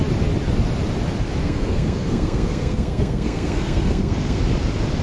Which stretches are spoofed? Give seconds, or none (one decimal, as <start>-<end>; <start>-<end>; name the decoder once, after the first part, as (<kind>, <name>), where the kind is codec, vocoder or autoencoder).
1.4-4.4 (codec, SNAC)